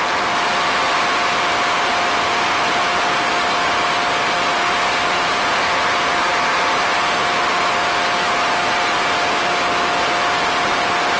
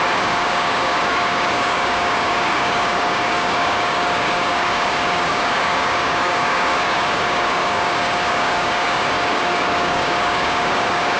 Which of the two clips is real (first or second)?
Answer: first